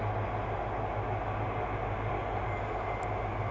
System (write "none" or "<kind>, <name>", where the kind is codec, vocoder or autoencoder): none